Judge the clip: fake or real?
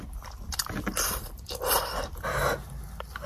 real